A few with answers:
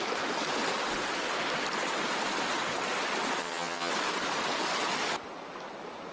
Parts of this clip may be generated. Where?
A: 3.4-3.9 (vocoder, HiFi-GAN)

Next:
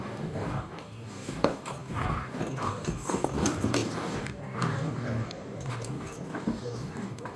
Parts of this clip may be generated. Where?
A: 0.0-7.4 (codec, DAC)

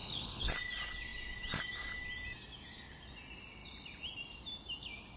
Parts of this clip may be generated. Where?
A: 0.0-0.5 (codec, HILCodec)